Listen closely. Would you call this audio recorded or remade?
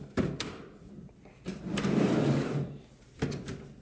recorded